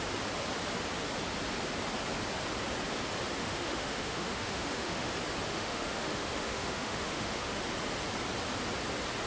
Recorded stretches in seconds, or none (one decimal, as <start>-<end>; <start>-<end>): 0.0-3.4; 5.1-5.5; 7.6-9.3